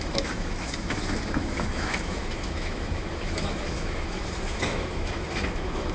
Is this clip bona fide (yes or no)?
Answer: no